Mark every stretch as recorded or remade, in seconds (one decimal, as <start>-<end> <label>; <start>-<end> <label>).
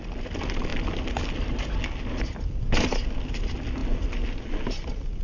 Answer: 0.0-5.2 recorded